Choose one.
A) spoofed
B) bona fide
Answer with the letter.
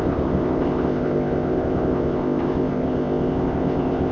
A